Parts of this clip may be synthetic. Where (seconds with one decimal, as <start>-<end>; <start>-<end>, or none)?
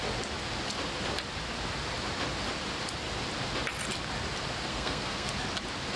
4.7-5.3